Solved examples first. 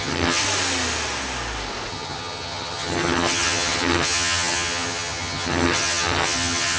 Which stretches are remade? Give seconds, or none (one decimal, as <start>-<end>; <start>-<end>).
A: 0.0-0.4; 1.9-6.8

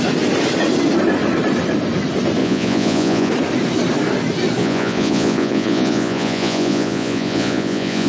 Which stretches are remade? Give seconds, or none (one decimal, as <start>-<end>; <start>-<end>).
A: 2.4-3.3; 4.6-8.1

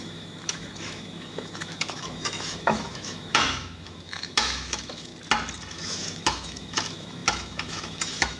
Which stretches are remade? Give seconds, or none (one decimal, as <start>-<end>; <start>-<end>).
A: 0.0-5.1; 5.7-8.4

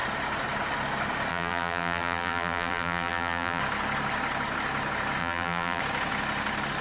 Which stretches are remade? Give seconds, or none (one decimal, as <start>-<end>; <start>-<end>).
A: 1.3-3.6; 5.2-5.8